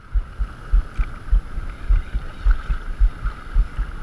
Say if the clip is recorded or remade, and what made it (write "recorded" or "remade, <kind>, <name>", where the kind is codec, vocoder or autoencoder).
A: recorded